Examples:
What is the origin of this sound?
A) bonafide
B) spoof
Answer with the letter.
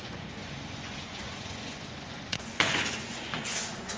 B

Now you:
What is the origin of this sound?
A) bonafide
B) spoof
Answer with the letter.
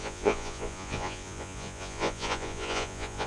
B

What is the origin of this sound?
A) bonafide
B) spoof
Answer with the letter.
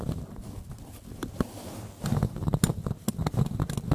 A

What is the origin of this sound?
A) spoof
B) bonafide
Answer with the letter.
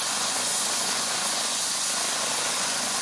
A